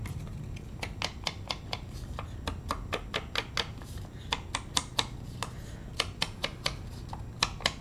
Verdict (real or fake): real